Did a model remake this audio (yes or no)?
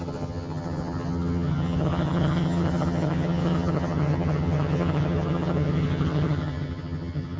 yes